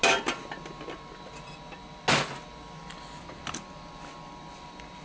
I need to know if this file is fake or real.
real